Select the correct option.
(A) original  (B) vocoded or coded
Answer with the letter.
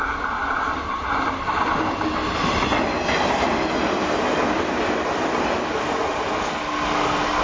A